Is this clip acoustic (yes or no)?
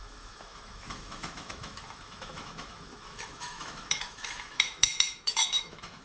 no